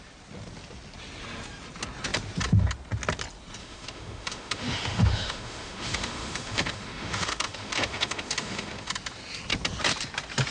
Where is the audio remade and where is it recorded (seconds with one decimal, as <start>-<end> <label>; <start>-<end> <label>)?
0.0-3.6 recorded; 3.6-8.9 remade; 8.9-10.5 recorded